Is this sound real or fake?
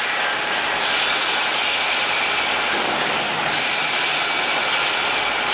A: real